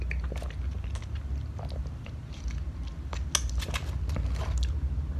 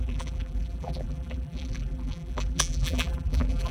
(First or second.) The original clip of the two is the first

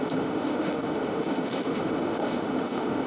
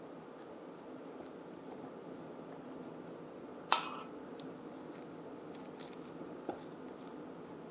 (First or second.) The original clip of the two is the second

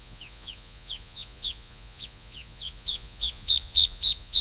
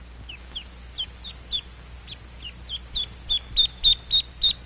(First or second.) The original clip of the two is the second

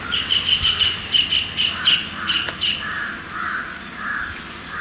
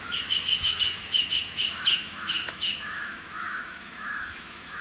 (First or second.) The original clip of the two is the first